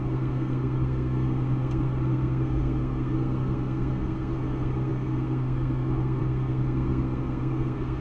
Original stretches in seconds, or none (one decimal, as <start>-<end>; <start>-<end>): none